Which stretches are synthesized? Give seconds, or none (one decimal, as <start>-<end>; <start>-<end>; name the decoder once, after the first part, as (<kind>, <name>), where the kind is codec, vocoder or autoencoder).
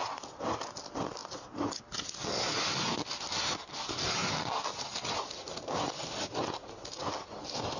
none